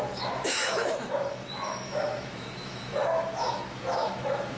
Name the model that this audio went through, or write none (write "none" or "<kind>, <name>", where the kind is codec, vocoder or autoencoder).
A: autoencoder, DAC-VAE